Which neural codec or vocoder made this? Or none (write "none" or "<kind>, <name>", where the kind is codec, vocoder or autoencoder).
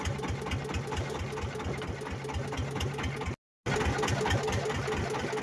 none